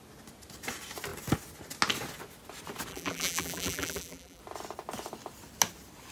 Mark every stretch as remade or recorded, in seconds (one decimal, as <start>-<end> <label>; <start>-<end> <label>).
0.0-2.9 recorded; 2.9-4.4 remade; 4.4-6.1 recorded